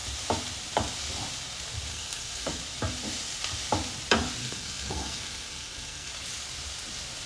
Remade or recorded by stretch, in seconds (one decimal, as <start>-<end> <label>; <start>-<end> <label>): 0.0-1.9 recorded; 1.9-2.6 remade; 2.6-4.4 recorded; 4.4-6.1 remade; 6.1-7.3 recorded